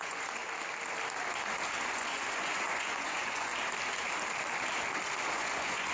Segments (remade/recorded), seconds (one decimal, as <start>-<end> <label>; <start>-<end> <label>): 0.0-0.4 remade; 0.4-1.9 recorded; 1.9-3.5 remade; 3.5-5.3 recorded; 5.3-5.9 remade